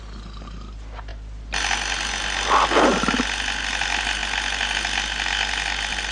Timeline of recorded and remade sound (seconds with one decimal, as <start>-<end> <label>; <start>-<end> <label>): 0.0-6.1 recorded